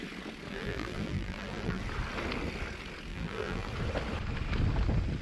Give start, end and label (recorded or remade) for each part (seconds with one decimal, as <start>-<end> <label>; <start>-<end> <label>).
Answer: 0.0-0.5 recorded; 0.5-1.8 remade; 1.8-3.1 recorded; 3.1-3.7 remade; 3.7-5.2 recorded